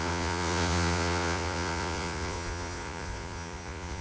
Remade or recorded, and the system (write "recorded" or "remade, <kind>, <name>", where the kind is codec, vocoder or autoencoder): remade, vocoder, Vocos